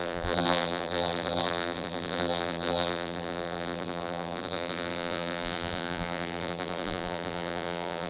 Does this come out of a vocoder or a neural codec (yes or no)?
yes